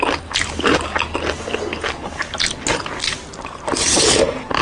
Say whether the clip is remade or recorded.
recorded